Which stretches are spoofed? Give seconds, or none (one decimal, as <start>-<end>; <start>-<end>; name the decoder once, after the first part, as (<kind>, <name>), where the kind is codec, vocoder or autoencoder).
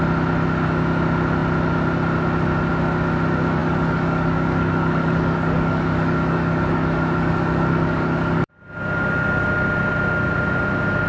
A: 3.6-8.5 (codec, DAC)